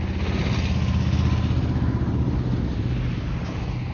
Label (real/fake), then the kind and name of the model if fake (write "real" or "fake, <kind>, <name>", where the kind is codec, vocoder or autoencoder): real